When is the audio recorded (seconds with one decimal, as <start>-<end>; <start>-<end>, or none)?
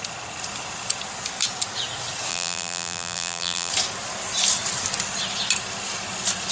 0.0-2.3; 3.7-6.5